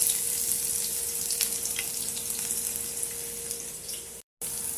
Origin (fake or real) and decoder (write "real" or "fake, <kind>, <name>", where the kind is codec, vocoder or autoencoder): real